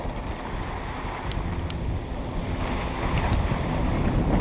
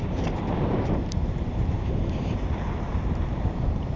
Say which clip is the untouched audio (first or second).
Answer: first